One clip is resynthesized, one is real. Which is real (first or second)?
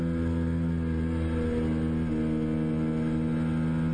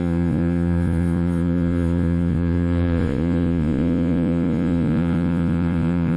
first